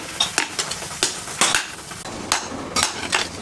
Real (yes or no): yes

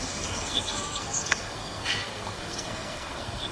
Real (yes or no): no